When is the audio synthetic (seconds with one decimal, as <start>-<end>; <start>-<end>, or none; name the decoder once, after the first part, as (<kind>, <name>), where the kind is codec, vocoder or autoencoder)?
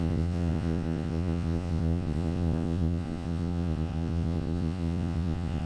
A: 0.0-5.7 (vocoder, Vocos)